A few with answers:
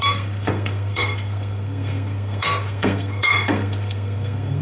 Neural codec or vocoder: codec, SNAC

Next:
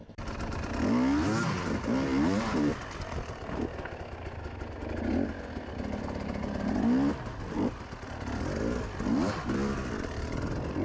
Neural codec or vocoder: none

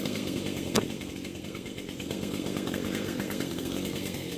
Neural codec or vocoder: codec, SNAC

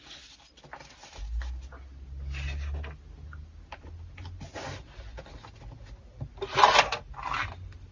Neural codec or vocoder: none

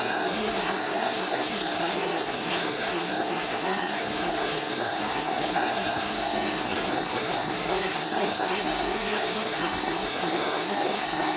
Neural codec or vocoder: codec, SNAC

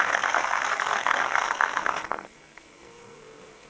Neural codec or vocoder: codec, SNAC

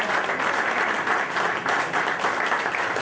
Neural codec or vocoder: none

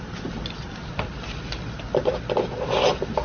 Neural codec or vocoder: none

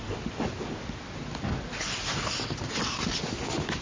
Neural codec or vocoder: none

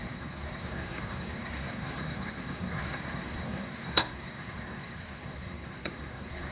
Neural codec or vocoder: codec, SNAC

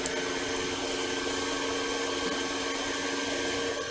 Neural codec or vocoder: none